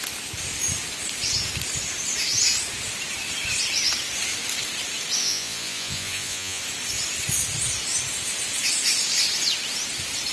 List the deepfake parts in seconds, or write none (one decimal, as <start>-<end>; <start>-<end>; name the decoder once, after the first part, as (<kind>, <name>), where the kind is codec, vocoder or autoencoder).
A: 5.2-6.6 (vocoder, Vocos)